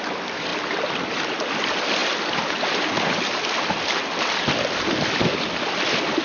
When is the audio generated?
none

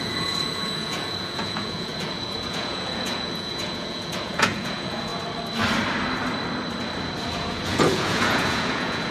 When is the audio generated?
0.0-5.1 (vocoder, Vocos); 7.2-9.1

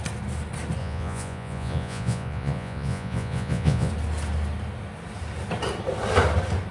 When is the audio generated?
0.8-3.9 (vocoder, Vocos)

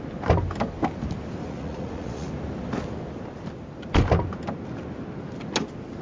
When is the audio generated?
1.4-2.3 (vocoder, Vocos)

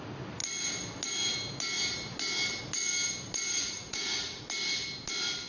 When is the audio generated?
3.6-4.4 (vocoder, Vocos)